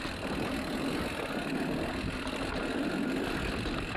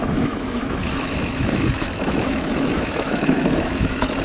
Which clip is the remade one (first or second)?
second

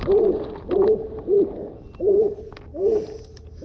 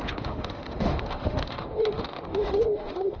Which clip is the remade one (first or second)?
second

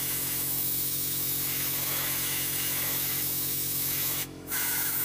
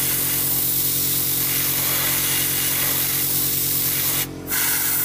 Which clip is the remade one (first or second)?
first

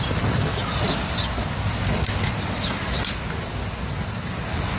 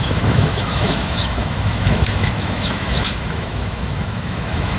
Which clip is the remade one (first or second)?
second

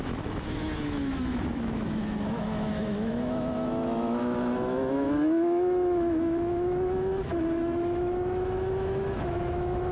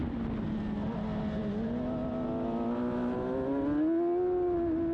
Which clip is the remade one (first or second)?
first